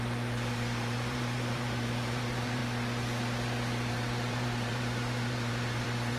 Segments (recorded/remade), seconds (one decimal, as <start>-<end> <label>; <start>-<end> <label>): 0.0-2.6 remade; 2.6-3.9 recorded; 3.9-6.2 remade